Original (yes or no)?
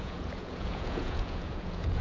no